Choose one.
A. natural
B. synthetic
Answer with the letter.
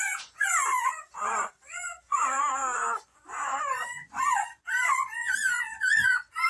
B